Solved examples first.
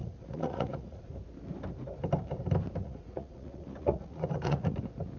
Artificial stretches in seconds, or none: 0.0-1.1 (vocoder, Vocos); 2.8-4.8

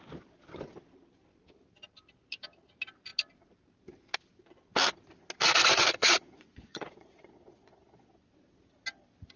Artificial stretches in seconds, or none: 5.7-8.3 (vocoder, Vocos)

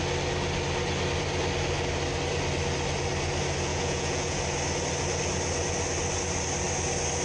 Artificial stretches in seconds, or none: 3.7-4.4 (vocoder, Vocos)

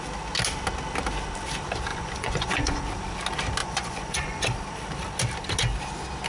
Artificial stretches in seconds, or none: 1.9-2.8 (vocoder, Vocos); 3.6-4.4